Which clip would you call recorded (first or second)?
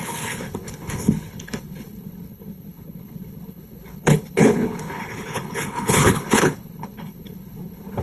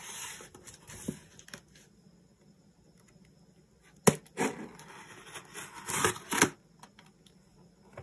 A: second